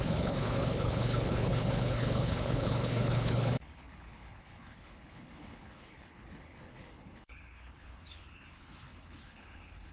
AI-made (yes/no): yes